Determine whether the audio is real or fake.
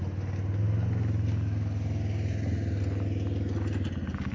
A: real